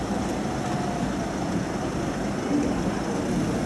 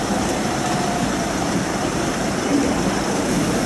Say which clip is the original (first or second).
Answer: first